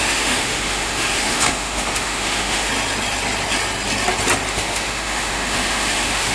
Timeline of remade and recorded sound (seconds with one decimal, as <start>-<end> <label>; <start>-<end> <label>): 0.0-2.7 remade; 2.7-4.5 recorded; 4.5-6.3 remade

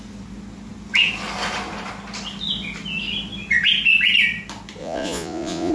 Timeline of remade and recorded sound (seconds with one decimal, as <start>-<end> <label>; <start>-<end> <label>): 0.0-4.8 recorded; 4.8-5.7 remade

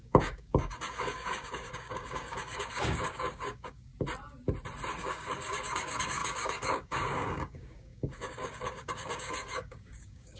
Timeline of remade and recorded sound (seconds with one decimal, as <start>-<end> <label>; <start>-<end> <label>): 0.0-3.9 remade; 3.9-5.0 recorded; 5.0-10.4 remade

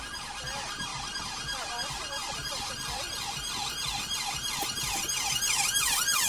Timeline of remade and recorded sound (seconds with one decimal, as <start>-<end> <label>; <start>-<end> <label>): 0.0-6.3 remade

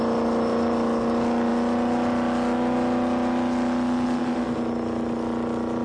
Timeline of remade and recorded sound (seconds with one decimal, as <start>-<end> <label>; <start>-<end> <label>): 0.0-5.8 recorded

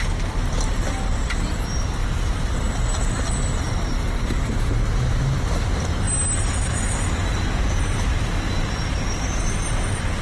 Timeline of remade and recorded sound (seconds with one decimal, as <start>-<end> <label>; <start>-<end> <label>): 0.0-10.2 recorded

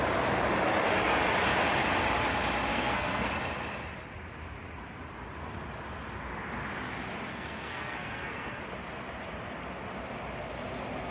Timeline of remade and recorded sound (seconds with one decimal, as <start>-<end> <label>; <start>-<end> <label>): 0.0-2.7 recorded; 2.7-3.3 remade; 3.3-7.3 recorded; 7.3-8.6 remade; 8.6-11.1 recorded

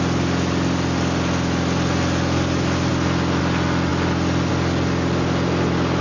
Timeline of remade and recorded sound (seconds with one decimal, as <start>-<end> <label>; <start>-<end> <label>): 0.0-6.0 recorded